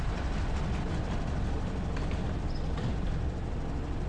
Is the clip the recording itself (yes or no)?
no